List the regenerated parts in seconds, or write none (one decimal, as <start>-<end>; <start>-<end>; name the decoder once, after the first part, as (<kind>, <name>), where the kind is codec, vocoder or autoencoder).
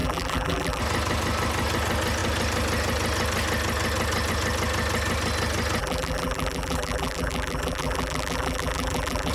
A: 0.0-0.8 (vocoder, BigVGAN v2); 5.8-9.3